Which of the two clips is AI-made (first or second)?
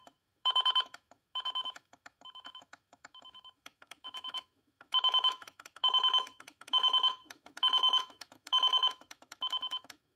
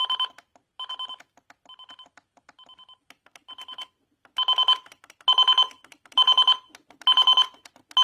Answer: first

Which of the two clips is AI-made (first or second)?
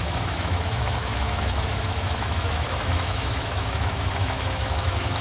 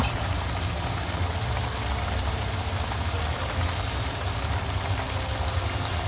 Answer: first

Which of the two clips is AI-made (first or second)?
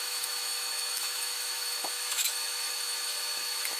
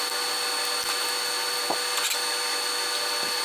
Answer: first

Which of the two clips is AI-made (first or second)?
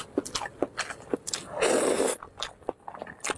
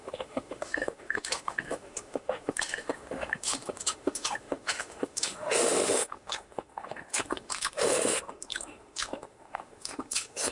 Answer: second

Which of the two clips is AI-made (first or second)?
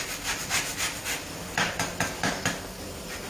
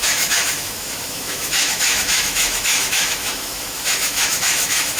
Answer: second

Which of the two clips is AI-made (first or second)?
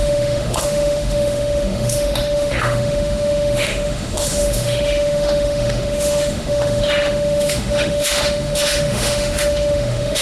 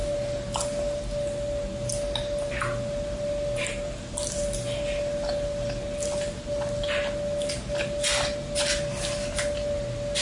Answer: first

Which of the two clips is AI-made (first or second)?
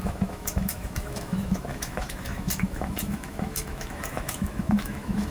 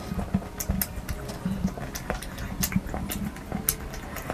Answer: first